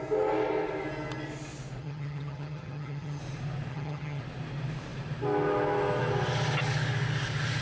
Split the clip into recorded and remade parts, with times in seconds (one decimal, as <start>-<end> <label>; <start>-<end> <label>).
0.0-1.8 recorded; 1.8-3.2 remade; 3.2-3.7 recorded; 3.7-4.2 remade; 4.2-7.6 recorded